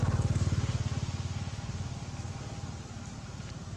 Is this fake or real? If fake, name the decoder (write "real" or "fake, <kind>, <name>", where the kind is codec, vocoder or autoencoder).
real